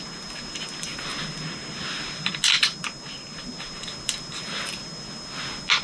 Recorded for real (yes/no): yes